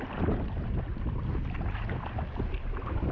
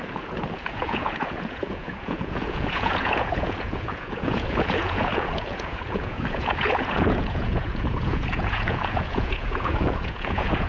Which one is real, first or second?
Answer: first